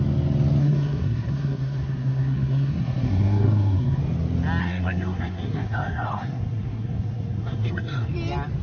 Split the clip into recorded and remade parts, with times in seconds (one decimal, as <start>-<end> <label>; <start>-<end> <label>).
0.0-0.6 recorded; 0.6-4.0 remade; 4.0-4.6 recorded; 4.6-8.1 remade; 8.1-8.6 recorded